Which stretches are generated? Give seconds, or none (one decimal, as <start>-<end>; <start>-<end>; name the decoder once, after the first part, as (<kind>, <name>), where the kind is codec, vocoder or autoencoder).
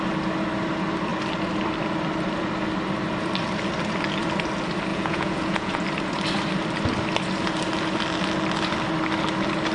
4.9-5.8 (vocoder, Vocos)